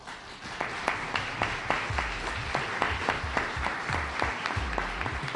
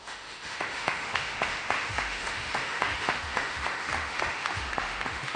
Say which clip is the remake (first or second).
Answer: second